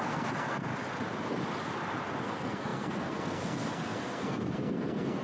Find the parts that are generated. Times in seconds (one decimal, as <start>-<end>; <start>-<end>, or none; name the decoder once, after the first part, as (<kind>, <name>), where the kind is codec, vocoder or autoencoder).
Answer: 0.0-0.7 (codec, SNAC); 2.2-5.2